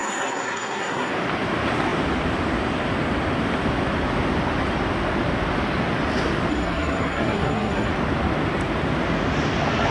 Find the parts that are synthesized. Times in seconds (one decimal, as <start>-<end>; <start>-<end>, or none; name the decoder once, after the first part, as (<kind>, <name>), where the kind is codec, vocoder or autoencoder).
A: 0.0-1.1 (codec, SNAC); 6.5-7.9